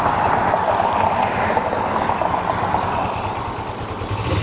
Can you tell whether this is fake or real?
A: real